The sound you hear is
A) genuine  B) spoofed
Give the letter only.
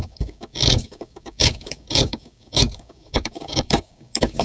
B